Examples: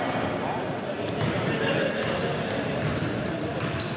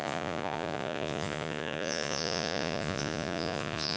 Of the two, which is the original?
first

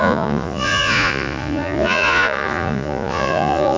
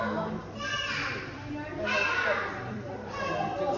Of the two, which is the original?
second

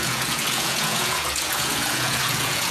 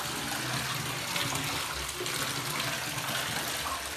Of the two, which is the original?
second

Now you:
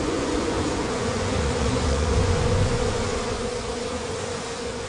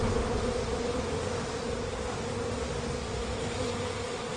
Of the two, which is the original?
second